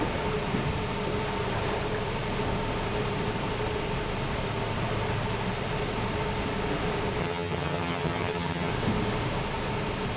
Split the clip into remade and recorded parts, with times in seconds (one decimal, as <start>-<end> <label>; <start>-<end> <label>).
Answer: 0.0-7.2 recorded; 7.2-8.7 remade; 8.7-10.2 recorded